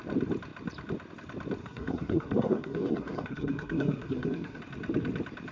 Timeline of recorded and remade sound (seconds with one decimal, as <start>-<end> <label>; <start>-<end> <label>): 0.0-1.6 recorded; 1.6-4.6 remade; 4.6-5.5 recorded